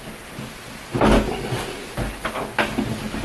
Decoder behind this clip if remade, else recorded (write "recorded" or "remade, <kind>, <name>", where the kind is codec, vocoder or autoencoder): recorded